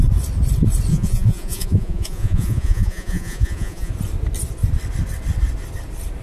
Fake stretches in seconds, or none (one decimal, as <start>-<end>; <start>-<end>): 0.9-3.9